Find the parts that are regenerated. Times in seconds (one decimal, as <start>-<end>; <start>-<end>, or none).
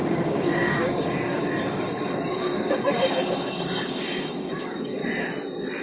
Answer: 0.0-5.0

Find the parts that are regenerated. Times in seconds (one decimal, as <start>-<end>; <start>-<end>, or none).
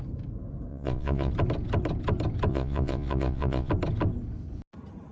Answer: 0.7-1.3; 2.5-3.7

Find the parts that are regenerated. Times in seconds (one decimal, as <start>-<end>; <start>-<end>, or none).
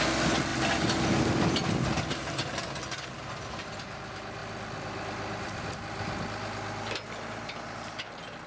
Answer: 4.4-5.7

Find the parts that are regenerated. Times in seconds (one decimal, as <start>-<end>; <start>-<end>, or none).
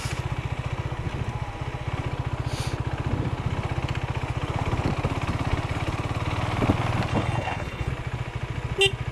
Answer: 7.1-7.9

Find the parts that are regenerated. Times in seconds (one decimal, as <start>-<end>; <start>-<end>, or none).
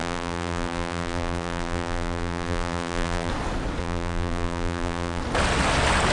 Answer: 0.0-3.3; 3.8-5.2